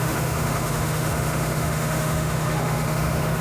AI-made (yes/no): yes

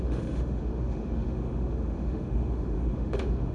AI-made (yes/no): yes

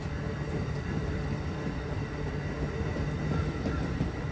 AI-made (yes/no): no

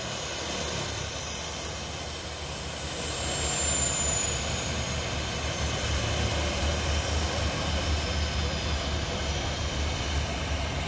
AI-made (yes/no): no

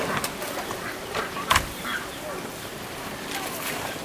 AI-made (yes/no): no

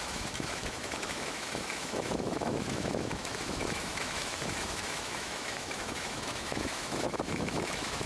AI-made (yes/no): yes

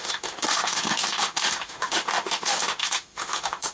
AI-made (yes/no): yes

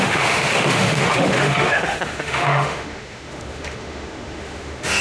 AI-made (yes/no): yes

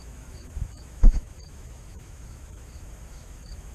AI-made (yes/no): yes